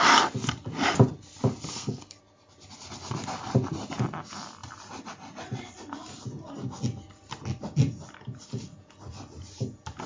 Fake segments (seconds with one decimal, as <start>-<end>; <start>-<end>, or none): 1.7-2.2